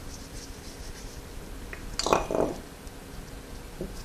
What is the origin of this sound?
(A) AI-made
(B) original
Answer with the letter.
B